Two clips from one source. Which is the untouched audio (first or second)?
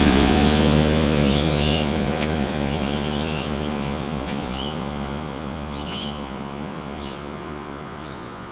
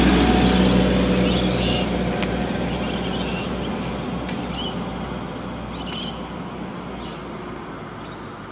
second